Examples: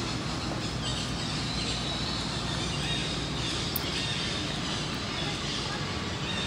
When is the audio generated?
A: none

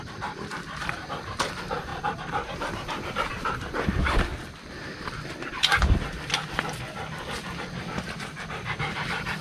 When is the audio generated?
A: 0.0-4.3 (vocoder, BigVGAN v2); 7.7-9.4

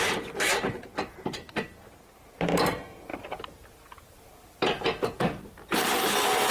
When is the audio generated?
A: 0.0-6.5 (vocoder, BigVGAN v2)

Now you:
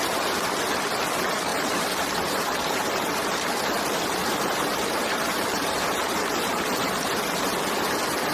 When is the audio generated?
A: 1.5-6.5 (vocoder, BigVGAN v2)

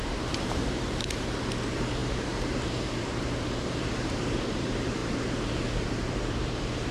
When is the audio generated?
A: 0.0-5.0 (vocoder, BigVGAN v2); 5.8-6.9

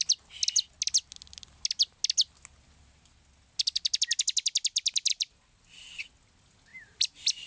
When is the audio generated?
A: 5.1-6.0 (vocoder, BigVGAN v2); 6.7-7.5